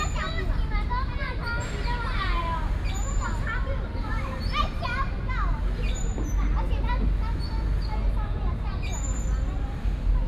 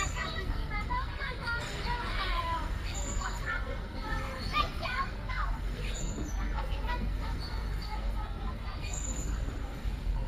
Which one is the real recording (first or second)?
first